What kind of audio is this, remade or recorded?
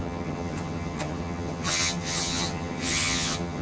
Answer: remade